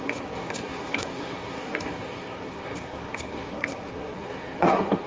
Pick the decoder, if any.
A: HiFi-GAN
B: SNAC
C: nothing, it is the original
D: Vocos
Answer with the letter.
B